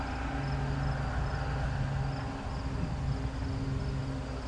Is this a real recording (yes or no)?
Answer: yes